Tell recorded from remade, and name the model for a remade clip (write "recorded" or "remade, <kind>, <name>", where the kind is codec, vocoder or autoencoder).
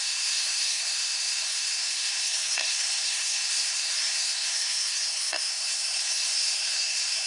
remade, codec, SNAC